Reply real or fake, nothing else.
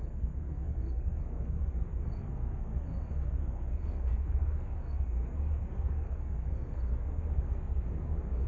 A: fake